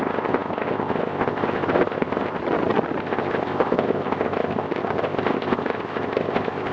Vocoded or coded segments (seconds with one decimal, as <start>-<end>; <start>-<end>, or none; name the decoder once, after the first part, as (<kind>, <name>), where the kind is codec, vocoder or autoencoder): 0.0-2.4 (codec, ZipCodec); 3.0-6.7